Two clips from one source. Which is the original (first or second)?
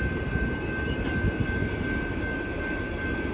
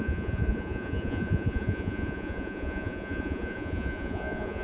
first